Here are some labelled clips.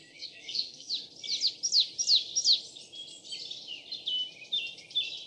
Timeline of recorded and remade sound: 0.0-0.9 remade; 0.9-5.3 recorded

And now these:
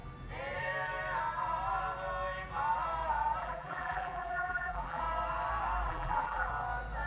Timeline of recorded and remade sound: 0.0-3.4 recorded; 3.4-5.0 remade; 5.0-5.9 recorded; 5.9-6.5 remade; 6.5-7.1 recorded

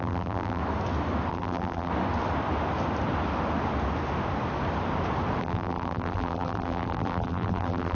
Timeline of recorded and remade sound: 0.0-0.6 remade; 0.6-1.3 recorded; 1.3-1.9 remade; 1.9-5.4 recorded; 5.4-7.9 remade

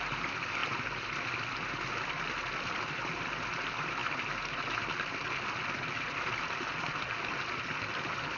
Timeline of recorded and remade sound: 0.0-8.4 recorded

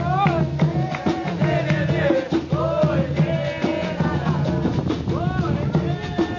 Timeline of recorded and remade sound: 0.0-0.7 recorded; 0.7-2.1 remade; 2.1-3.7 recorded; 3.7-4.5 remade; 4.5-6.4 recorded

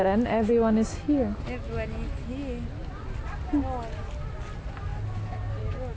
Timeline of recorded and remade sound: 0.0-6.0 recorded